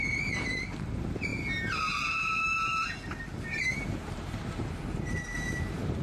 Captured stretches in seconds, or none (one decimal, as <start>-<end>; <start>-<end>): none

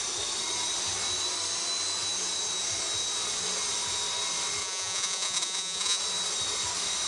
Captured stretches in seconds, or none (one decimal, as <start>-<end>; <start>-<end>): 0.0-4.6; 6.0-7.1

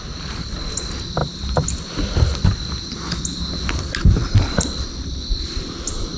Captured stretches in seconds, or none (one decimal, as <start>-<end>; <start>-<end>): 0.0-6.2